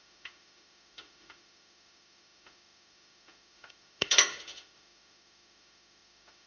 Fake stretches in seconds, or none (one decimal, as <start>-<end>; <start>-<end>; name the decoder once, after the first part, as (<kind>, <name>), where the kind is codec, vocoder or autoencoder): 0.0-6.5 (autoencoder, DAC-VAE)